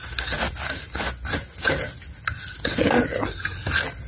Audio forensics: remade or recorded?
recorded